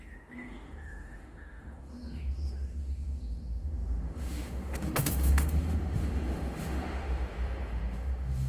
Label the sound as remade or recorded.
remade